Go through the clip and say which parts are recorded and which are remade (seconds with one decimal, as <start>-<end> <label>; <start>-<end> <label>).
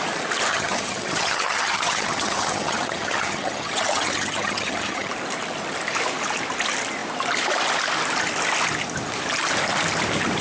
0.0-0.5 recorded; 0.5-5.1 remade; 5.1-10.4 recorded